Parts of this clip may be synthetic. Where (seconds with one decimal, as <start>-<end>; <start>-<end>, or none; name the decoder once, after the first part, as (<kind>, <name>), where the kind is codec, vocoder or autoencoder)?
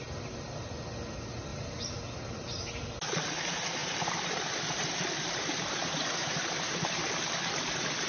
1.5-2.0 (vocoder, BigVGAN v2); 3.8-7.1